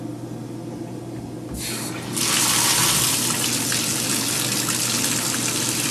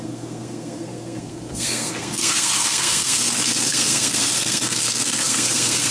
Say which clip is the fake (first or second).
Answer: second